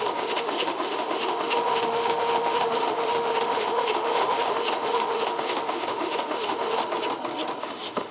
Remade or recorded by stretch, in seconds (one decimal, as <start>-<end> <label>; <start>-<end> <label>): 0.0-6.8 remade; 6.8-7.6 recorded; 7.6-8.1 remade